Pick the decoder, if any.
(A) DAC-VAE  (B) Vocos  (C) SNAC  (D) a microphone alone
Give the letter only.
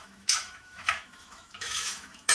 A